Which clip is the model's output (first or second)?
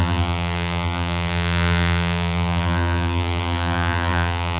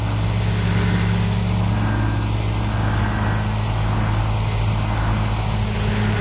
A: first